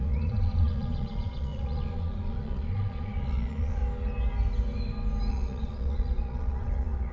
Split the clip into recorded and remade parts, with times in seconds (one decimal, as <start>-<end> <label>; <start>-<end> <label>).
0.0-3.8 remade; 3.8-5.3 recorded; 5.3-7.1 remade